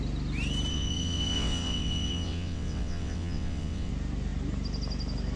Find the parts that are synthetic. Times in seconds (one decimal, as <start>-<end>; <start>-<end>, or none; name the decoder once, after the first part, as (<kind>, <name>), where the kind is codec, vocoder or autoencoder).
0.7-3.9 (vocoder, WaveNeXt)